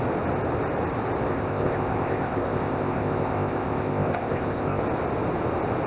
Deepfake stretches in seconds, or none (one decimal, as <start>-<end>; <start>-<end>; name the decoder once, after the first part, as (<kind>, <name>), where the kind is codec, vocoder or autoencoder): 1.3-4.8 (codec, ZipCodec)